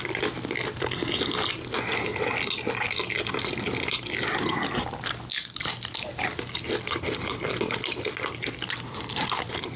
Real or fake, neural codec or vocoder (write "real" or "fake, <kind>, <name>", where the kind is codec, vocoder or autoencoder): real